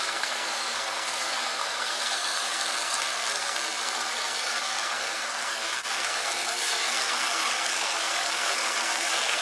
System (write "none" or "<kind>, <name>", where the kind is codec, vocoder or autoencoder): codec, SNAC